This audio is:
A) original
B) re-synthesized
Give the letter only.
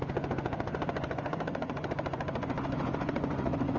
B